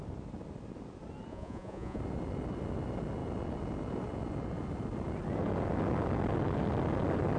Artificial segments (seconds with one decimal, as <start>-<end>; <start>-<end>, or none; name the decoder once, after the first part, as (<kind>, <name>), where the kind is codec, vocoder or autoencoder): 1.3-2.0 (vocoder, Vocos)